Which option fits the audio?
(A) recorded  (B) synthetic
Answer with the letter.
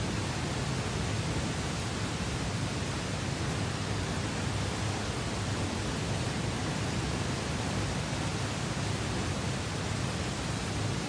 A